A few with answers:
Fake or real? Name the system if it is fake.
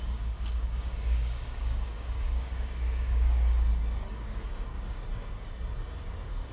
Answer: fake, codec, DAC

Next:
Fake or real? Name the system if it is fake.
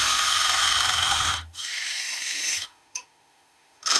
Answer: fake, autoencoder, DAC-VAE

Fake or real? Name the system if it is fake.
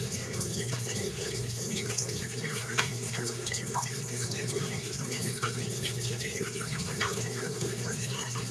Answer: fake, codec, SNAC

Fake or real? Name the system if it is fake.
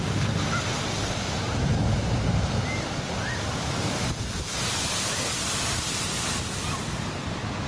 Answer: real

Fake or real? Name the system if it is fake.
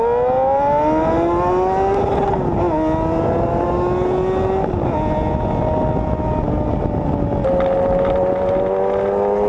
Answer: real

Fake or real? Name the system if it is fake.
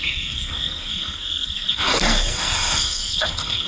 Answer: fake, codec, SNAC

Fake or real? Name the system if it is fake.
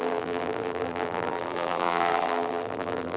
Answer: fake, vocoder, BigVGAN v2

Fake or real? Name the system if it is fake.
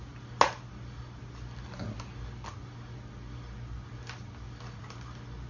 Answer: real